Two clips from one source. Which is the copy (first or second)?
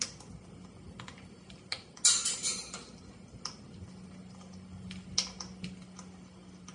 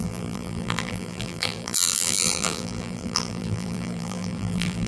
second